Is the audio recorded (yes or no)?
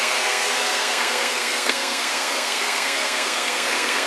no